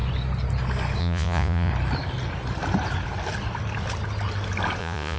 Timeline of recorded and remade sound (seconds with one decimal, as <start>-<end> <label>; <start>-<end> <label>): 0.0-1.0 recorded; 1.0-1.7 remade; 1.7-4.8 recorded; 4.8-5.2 remade